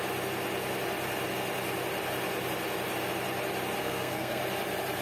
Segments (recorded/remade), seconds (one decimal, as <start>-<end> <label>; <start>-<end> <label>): 0.0-3.8 recorded; 3.8-4.4 remade; 4.4-5.0 recorded